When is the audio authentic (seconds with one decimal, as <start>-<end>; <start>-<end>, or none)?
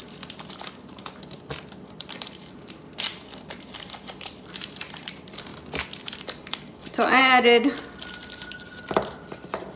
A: 5.5-6.2; 7.2-8.2